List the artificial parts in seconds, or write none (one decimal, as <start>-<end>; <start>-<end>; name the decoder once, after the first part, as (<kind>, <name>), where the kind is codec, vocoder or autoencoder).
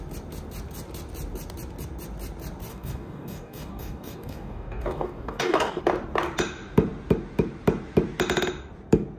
2.7-5.8 (codec, DAC)